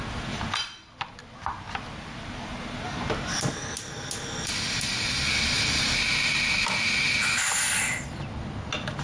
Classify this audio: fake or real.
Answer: real